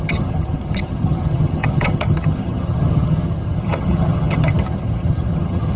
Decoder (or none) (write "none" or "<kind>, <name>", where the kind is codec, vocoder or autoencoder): vocoder, HiFi-GAN